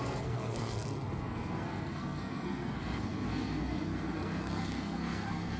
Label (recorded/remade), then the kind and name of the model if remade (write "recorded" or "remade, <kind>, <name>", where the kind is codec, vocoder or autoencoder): remade, codec, SNAC